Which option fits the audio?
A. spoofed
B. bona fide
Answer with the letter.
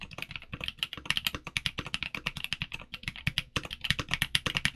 B